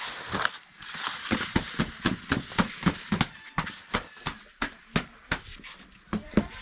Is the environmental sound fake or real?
real